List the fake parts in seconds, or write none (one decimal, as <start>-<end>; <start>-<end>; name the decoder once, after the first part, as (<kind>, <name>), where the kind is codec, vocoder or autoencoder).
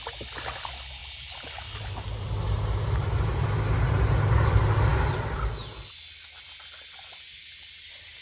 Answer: none